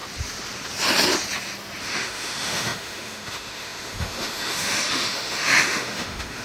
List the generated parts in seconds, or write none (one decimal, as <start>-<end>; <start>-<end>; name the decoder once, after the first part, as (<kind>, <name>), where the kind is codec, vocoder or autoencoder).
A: 1.8-6.4 (autoencoder, DAC-VAE)